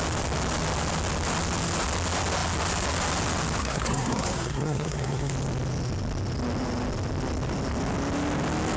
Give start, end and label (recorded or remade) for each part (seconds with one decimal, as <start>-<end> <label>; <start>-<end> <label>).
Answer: 0.0-3.6 recorded; 3.6-5.3 remade; 5.3-8.8 recorded